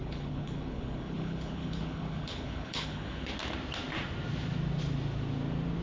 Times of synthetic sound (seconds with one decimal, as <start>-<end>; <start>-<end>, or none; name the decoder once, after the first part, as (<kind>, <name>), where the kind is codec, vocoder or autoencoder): 0.0-3.3 (codec, HILCodec)